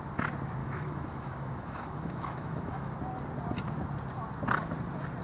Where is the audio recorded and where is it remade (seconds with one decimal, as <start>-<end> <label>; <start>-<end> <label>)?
0.0-0.6 recorded; 0.6-2.9 remade; 2.9-5.2 recorded